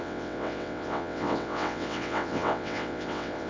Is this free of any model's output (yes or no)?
no